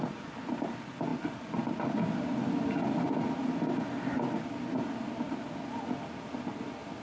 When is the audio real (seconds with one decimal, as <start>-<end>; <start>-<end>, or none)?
0.0-7.0